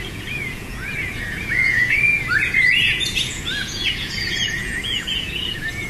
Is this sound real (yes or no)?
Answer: no